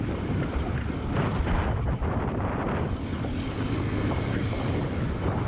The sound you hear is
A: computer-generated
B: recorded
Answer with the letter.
B